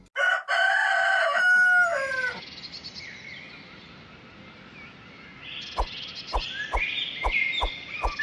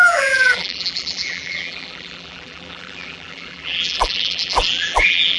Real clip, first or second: first